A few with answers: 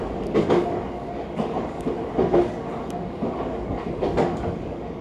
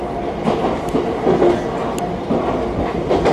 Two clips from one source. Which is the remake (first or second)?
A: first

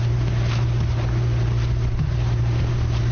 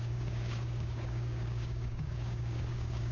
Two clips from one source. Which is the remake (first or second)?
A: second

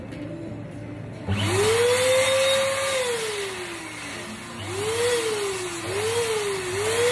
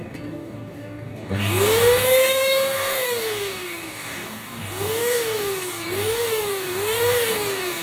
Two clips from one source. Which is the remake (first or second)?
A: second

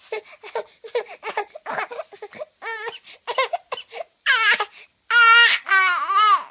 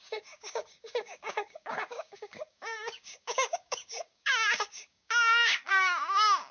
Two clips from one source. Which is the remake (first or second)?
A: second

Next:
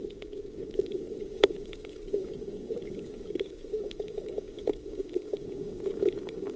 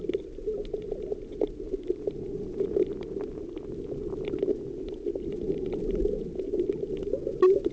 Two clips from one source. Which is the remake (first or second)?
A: first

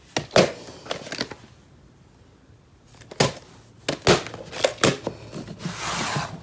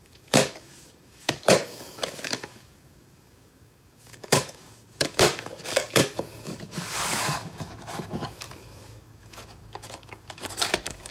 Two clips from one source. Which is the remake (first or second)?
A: second